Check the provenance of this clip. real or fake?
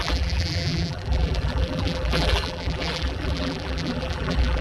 fake